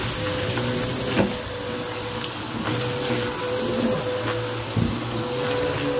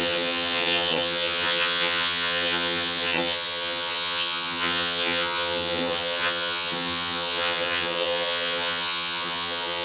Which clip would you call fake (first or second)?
second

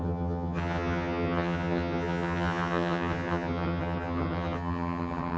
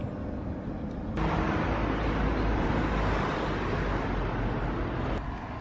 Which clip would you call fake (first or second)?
first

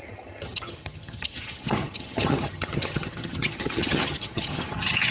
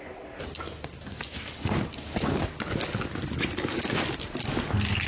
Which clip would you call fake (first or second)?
first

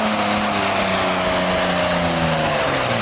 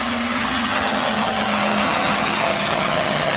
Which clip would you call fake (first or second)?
second